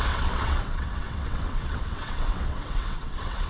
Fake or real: fake